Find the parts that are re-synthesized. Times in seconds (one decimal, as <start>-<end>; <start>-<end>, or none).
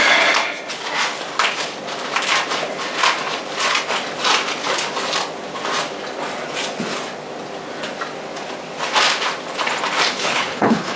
10.1-11.0